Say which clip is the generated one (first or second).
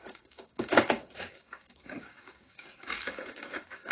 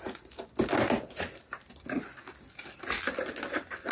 first